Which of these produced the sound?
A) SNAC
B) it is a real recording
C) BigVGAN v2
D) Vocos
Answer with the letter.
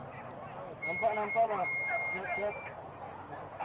B